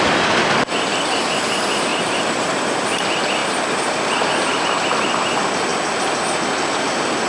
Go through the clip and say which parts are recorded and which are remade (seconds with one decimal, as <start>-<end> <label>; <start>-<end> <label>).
0.0-1.9 recorded; 1.9-2.7 remade; 2.7-3.4 recorded; 3.4-4.6 remade; 4.6-7.3 recorded